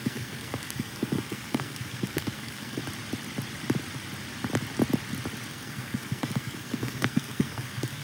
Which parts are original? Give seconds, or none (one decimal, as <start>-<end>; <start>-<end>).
2.8-5.5